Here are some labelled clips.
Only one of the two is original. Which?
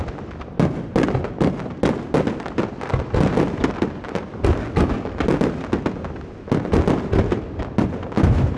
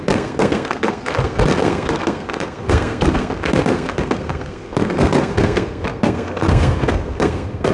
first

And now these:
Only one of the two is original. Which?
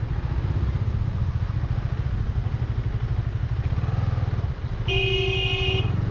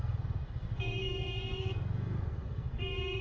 first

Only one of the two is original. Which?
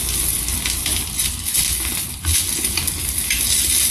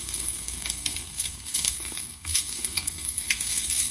first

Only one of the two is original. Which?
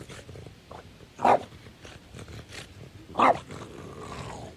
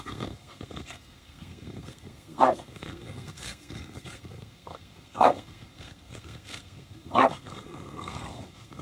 first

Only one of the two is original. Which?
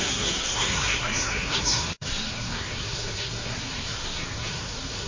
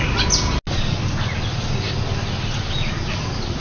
second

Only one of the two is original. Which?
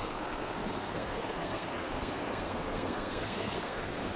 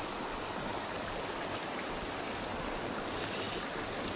second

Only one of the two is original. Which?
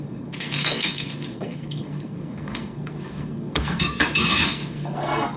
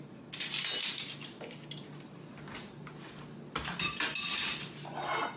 second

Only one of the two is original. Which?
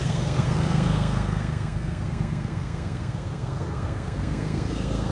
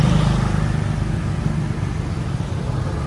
second